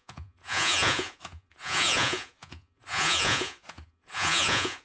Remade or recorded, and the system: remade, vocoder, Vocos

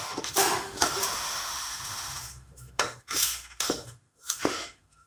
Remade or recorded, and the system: remade, autoencoder, DAC-VAE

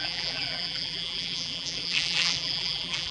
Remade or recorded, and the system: remade, vocoder, BigVGAN v2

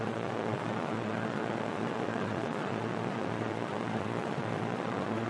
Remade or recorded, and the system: remade, vocoder, Vocos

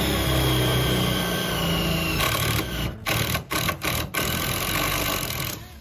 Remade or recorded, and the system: recorded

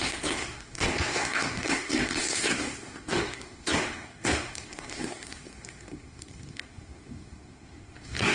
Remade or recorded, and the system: remade, codec, SNAC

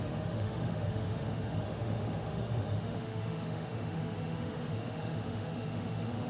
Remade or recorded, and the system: remade, autoencoder, DAC-VAE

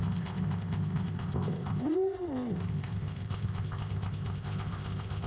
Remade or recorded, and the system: remade, codec, ZipCodec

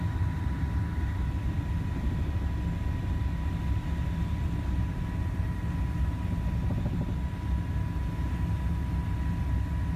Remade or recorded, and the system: recorded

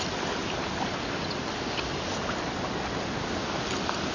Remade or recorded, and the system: recorded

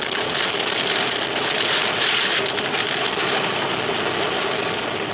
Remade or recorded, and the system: recorded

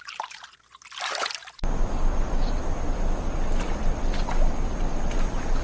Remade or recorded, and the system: recorded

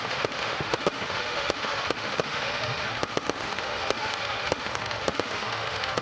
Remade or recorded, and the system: remade, autoencoder, DAC-VAE